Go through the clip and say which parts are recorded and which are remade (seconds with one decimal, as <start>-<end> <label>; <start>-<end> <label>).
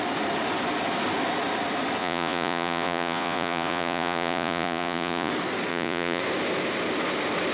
0.0-2.0 recorded; 2.0-5.3 remade; 5.3-5.7 recorded; 5.7-6.2 remade; 6.2-7.5 recorded